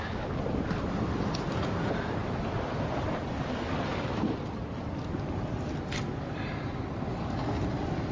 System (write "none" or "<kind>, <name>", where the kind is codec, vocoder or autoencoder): none